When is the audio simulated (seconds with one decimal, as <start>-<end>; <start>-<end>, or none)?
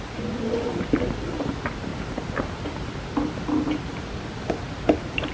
none